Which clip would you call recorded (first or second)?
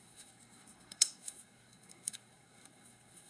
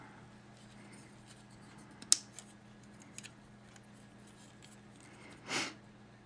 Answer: second